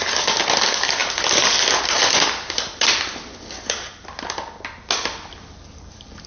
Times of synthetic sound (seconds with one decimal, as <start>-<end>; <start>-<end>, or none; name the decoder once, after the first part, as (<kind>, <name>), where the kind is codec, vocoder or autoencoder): none